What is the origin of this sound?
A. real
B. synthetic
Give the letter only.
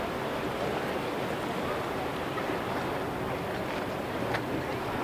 A